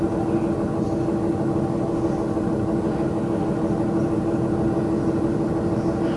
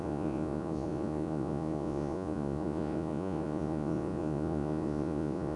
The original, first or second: first